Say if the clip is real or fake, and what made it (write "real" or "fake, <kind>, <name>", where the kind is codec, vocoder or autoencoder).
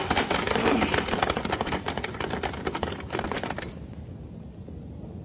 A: real